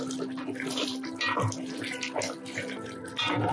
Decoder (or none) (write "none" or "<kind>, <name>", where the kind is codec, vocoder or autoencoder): none